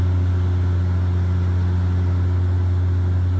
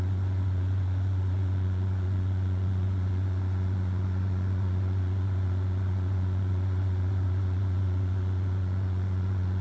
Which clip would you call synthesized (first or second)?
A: second